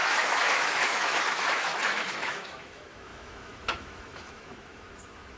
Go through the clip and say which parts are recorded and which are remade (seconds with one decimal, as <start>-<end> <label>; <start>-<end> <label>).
0.0-5.4 remade